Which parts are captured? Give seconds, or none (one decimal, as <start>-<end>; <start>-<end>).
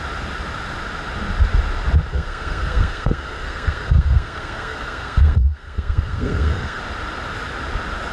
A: 0.0-2.1; 6.8-8.1